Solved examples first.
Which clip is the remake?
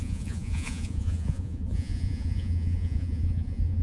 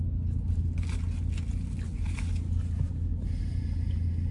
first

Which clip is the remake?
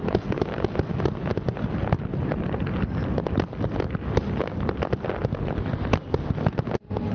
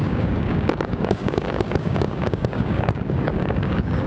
second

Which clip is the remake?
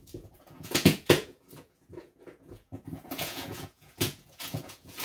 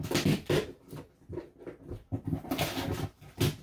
first